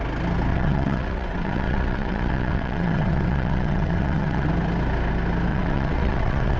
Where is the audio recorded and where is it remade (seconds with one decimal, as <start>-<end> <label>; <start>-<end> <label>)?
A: 0.0-0.5 recorded; 0.5-4.5 remade; 4.5-5.5 recorded; 5.5-6.6 remade

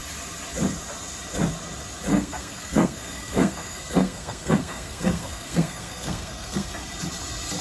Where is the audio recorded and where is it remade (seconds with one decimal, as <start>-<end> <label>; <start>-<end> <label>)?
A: 0.0-2.1 recorded; 2.1-6.7 remade; 6.7-7.6 recorded

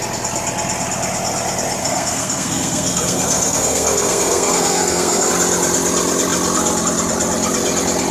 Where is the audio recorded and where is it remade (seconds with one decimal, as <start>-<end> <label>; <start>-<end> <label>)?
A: 0.0-1.8 recorded; 1.8-5.3 remade; 5.3-8.1 recorded

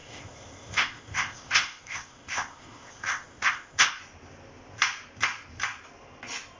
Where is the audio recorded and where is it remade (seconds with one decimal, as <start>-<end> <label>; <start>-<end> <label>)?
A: 0.0-4.0 remade; 4.0-6.6 recorded